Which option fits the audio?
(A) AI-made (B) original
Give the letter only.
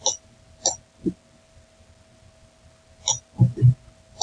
B